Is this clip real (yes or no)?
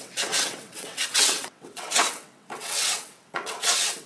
no